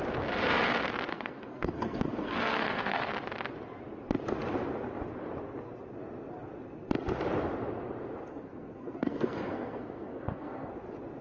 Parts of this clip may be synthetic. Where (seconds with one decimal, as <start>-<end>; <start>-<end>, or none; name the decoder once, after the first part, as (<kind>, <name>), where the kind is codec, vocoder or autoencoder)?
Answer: 1.1-3.1 (codec, SNAC); 8.3-10.7